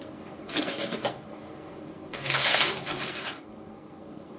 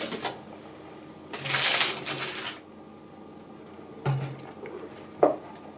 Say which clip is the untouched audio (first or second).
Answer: second